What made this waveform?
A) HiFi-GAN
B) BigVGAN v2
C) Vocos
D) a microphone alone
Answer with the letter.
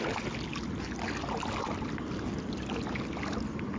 D